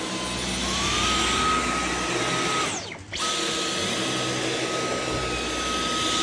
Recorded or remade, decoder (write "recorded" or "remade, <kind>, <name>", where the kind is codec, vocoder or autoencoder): recorded